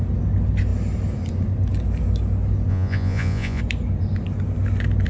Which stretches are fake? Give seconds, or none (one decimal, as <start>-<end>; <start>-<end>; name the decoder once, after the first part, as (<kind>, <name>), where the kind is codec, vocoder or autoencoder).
2.7-3.6 (vocoder, Vocos)

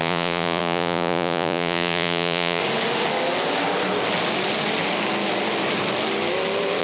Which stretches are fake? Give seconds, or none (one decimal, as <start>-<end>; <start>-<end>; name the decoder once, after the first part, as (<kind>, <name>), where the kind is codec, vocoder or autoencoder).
0.0-2.6 (vocoder, Vocos)

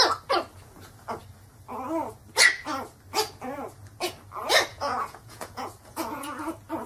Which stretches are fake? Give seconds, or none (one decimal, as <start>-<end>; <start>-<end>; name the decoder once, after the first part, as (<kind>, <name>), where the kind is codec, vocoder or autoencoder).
4.7-6.4 (vocoder, Vocos)

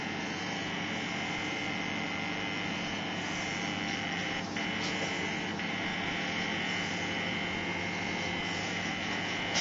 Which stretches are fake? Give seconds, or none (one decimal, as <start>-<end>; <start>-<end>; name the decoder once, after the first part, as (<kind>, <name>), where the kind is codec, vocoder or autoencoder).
0.0-1.6 (vocoder, Vocos); 2.7-3.5; 4.2-9.6